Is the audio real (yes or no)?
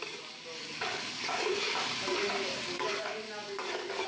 no